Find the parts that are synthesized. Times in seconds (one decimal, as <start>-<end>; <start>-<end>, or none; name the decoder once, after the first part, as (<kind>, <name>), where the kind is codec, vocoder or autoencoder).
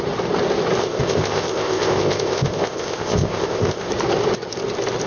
0.8-3.9 (codec, ZipCodec)